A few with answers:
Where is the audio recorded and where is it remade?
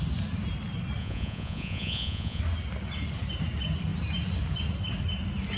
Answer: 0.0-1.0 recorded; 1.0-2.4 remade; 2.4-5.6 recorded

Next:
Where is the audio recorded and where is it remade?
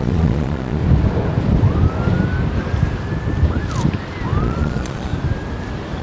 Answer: 0.0-0.8 remade; 0.8-4.4 recorded; 4.4-5.1 remade; 5.1-6.0 recorded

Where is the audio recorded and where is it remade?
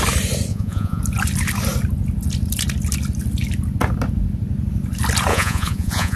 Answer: 0.0-0.5 recorded; 0.5-1.0 remade; 1.0-5.3 recorded; 5.3-6.2 remade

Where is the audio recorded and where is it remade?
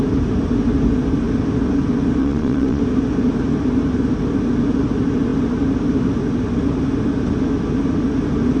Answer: 0.0-2.2 recorded; 2.2-2.8 remade; 2.8-8.6 recorded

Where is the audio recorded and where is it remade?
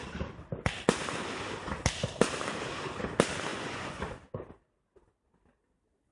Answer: 0.0-3.5 recorded; 3.5-4.0 remade; 4.0-6.1 recorded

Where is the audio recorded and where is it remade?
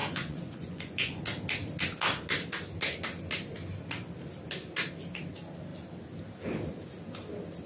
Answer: 0.0-1.2 remade; 1.2-7.7 recorded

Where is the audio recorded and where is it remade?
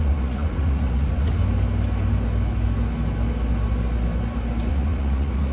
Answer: 0.0-1.4 remade; 1.4-4.7 recorded; 4.7-5.5 remade